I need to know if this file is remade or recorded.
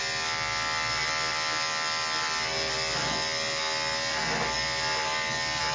recorded